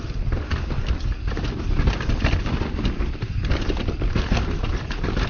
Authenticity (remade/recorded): recorded